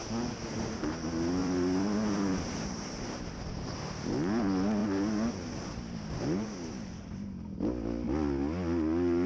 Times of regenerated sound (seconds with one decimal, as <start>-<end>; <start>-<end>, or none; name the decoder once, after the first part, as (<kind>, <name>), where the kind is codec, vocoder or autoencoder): 1.4-3.7 (vocoder, BigVGAN v2)